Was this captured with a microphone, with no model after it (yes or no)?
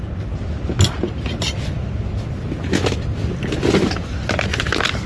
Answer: yes